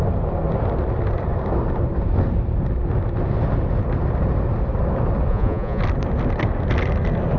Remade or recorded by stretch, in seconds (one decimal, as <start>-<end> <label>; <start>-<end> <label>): 0.0-5.3 recorded; 5.3-5.8 remade; 5.8-7.4 recorded